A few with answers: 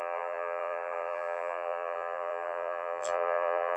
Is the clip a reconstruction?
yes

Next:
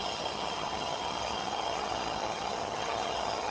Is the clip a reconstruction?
yes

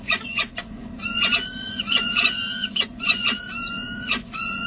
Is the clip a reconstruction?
yes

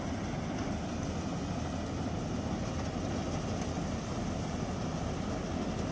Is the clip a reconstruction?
no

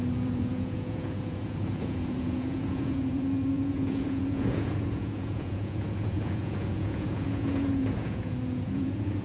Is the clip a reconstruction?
yes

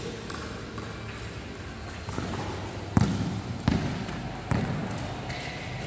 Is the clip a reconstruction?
no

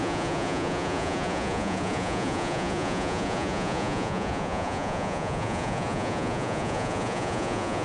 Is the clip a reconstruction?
yes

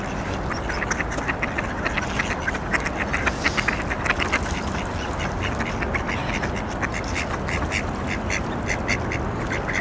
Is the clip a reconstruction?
no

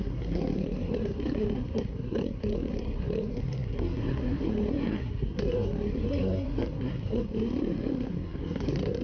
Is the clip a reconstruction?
yes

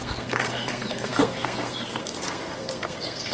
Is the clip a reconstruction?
yes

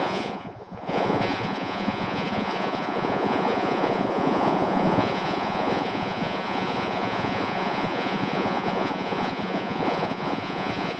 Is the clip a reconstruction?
yes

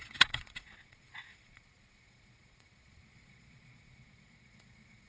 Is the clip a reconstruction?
yes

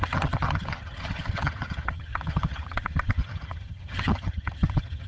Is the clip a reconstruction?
yes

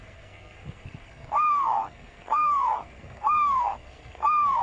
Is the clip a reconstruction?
yes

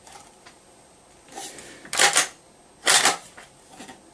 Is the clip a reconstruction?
no